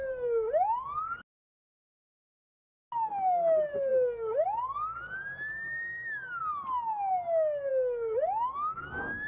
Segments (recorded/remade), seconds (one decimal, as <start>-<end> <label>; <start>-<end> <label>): 0.0-9.3 recorded

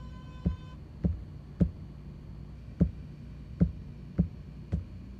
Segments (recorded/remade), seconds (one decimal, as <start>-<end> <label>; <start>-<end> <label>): 0.0-5.2 recorded

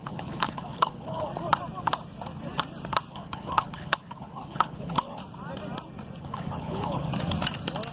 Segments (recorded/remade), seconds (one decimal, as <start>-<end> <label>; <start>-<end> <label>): 0.0-1.3 remade; 1.3-3.1 recorded; 3.1-5.2 remade; 5.2-6.2 recorded; 6.2-7.1 remade; 7.1-7.9 recorded